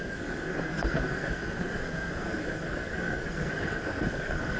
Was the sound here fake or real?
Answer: fake